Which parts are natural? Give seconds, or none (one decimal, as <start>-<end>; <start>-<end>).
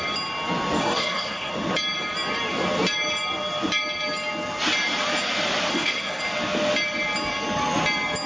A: 0.0-0.8; 1.5-5.7; 6.2-8.3